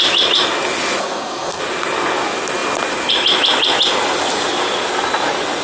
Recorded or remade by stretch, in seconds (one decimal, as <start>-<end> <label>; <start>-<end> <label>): 0.0-1.0 recorded; 1.0-1.6 remade; 1.6-5.6 recorded